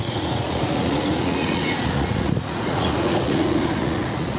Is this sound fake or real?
fake